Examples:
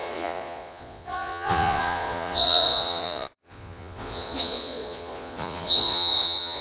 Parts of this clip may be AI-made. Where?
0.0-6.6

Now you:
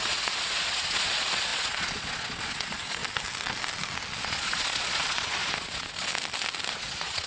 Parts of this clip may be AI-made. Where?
0.0-3.0; 4.2-6.1; 6.7-7.3

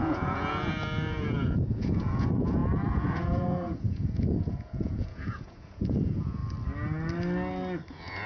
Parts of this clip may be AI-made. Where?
0.0-6.4; 7.9-8.3

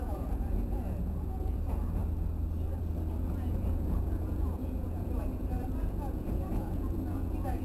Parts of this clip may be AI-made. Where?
0.0-2.0; 3.1-7.6

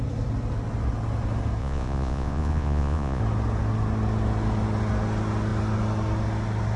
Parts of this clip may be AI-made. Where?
1.6-3.2